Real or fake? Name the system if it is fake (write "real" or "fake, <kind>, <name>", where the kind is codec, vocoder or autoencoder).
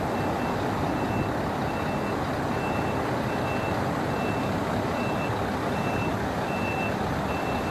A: real